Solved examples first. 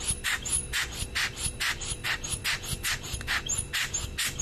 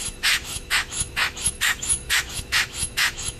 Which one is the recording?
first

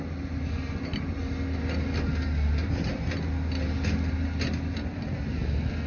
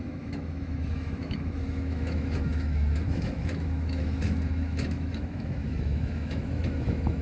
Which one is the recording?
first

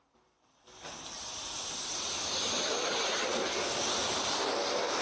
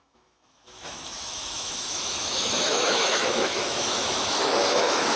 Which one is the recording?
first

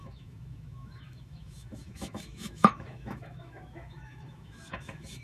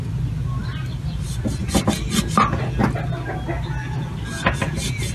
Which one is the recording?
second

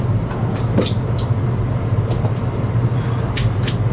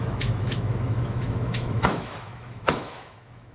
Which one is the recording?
first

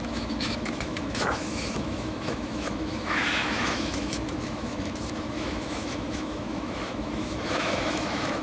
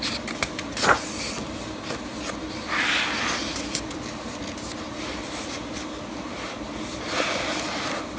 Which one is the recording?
second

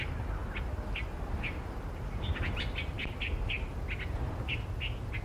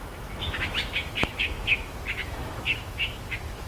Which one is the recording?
first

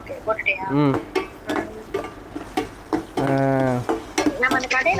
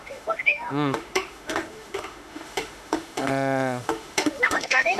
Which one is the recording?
first